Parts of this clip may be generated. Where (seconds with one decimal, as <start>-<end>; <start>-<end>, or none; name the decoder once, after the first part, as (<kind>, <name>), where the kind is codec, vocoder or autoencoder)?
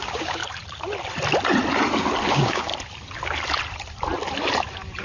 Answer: 0.0-0.4 (codec, DAC); 2.3-2.7